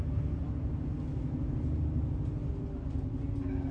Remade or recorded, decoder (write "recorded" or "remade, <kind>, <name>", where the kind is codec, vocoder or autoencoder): recorded